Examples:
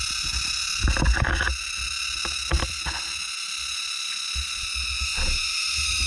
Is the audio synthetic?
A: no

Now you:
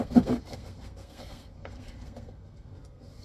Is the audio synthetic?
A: yes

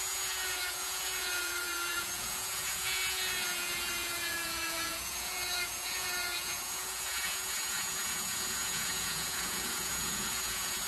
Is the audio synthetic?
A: yes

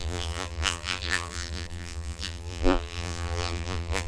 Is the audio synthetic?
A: yes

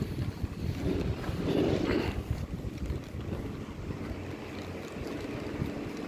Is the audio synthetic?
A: no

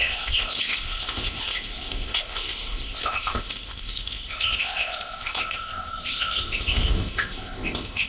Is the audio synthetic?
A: yes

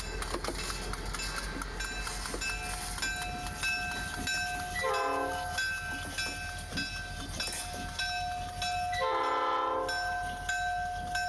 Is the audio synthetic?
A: no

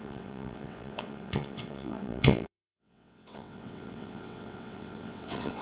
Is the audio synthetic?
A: yes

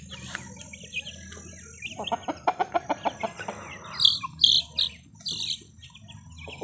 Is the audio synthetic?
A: no